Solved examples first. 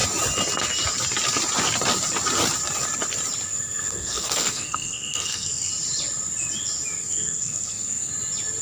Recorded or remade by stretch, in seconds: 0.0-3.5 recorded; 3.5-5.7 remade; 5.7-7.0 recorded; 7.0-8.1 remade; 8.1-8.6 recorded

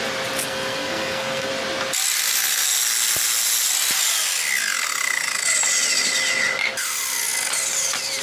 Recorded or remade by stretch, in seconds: 0.0-0.4 recorded; 0.4-1.5 remade; 1.5-8.2 recorded